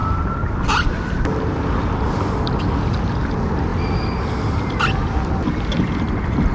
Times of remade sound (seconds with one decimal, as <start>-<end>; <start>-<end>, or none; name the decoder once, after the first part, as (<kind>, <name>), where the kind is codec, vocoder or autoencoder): none